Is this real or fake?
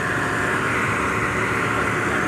real